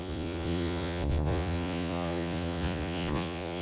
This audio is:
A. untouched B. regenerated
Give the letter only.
B